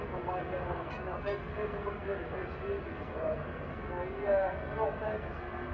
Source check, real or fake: fake